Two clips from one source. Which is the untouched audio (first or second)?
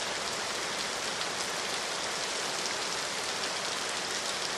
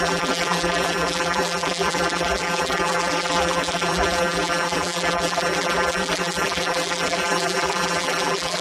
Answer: first